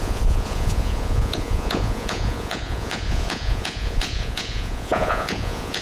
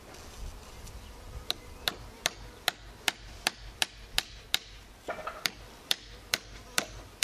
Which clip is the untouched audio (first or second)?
second